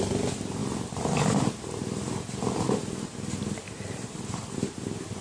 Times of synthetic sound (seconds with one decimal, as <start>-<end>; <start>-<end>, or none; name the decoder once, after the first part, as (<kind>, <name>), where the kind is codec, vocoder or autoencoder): 0.0-5.2 (vocoder, BigVGAN v2)